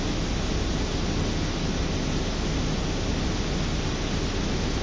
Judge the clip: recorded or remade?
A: recorded